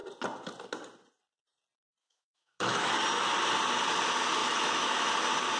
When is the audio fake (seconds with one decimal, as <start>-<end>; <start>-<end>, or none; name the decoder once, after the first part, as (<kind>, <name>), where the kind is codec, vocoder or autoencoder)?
2.0-2.9 (autoencoder, DAC-VAE); 4.4-5.1